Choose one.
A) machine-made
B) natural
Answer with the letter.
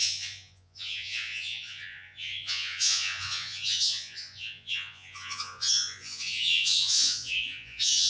A